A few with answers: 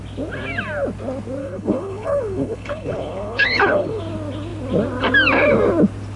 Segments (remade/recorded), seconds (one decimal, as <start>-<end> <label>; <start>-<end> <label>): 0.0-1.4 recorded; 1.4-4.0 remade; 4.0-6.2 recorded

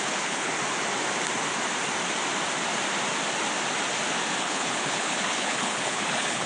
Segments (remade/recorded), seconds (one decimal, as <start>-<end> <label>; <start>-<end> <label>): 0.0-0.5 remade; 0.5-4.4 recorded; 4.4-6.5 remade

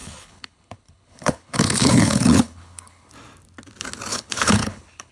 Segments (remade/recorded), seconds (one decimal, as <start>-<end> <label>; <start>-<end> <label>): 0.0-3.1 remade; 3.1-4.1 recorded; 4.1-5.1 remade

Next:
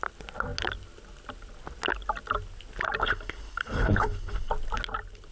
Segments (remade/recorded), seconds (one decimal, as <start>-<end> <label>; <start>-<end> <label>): 0.0-3.0 recorded; 3.0-4.5 remade; 4.5-5.3 recorded

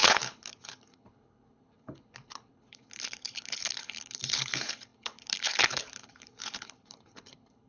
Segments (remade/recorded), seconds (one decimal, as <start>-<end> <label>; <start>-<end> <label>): 0.0-7.7 remade

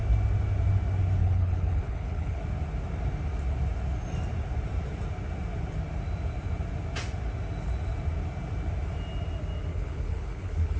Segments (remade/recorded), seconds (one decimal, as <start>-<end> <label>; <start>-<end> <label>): 0.0-1.2 recorded; 1.2-2.4 remade; 2.4-9.7 recorded; 9.7-10.8 remade

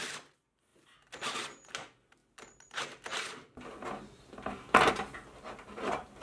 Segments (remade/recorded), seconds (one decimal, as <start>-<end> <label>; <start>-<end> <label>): 0.0-6.2 recorded

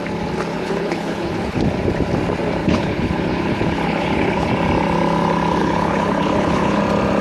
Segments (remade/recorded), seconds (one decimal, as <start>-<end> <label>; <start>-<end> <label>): 0.0-0.5 recorded; 0.5-1.6 remade; 1.6-2.6 recorded; 2.6-4.5 remade; 4.5-5.6 recorded; 5.6-6.8 remade; 6.8-7.2 recorded